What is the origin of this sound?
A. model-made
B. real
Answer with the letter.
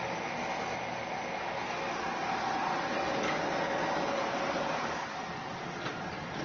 B